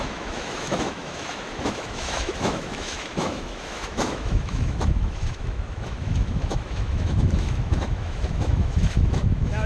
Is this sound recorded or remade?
remade